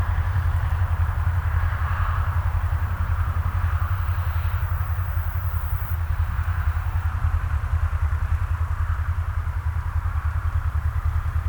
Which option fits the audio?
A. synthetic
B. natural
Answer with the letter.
A